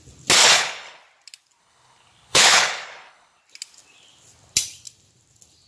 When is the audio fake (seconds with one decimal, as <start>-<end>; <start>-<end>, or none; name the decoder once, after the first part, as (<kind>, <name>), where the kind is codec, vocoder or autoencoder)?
0.4-1.0 (codec, HILCodec); 1.6-3.4